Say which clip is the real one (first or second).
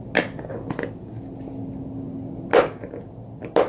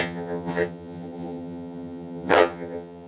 first